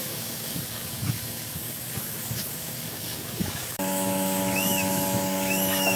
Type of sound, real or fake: fake